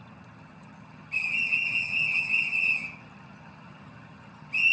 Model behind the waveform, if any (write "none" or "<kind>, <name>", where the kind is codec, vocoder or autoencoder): vocoder, HiFi-GAN